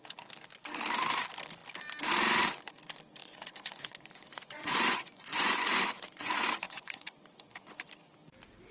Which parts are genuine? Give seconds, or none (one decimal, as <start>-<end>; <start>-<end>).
0.0-3.2; 7.9-8.7